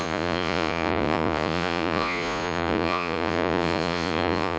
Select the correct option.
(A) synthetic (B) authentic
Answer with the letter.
A